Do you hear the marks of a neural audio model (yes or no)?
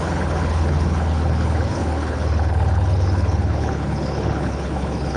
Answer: yes